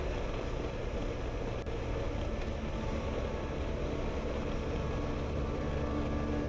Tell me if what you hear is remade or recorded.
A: recorded